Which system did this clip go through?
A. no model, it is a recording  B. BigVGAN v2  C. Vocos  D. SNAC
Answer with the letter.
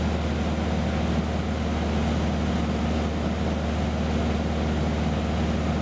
A